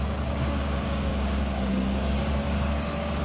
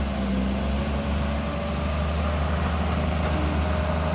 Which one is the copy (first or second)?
first